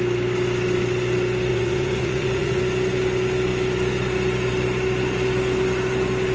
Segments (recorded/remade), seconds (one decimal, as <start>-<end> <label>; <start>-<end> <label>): 0.0-1.5 recorded; 1.5-2.6 remade; 2.6-6.3 recorded